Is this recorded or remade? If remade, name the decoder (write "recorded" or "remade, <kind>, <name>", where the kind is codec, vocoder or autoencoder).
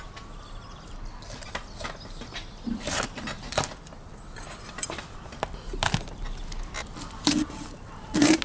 recorded